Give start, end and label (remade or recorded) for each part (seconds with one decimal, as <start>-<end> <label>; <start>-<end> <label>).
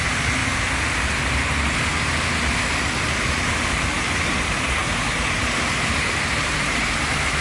0.0-0.4 remade; 0.4-4.1 recorded; 4.1-7.4 remade